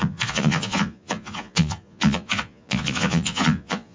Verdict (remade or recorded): remade